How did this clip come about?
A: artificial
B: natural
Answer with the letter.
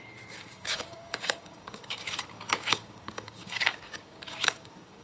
A